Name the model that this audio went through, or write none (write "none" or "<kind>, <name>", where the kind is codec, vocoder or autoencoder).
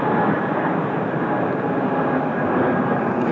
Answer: none